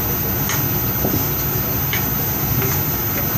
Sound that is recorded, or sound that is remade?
recorded